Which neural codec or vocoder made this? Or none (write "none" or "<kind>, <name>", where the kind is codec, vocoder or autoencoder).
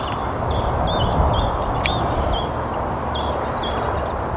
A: none